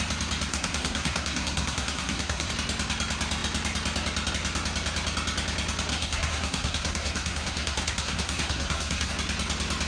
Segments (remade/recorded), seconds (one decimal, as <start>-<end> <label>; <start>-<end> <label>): 0.0-0.5 recorded; 0.5-2.5 remade; 2.5-5.9 recorded; 5.9-9.1 remade; 9.1-9.9 recorded